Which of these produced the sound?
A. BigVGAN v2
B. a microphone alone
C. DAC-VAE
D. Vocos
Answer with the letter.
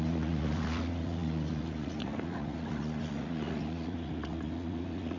D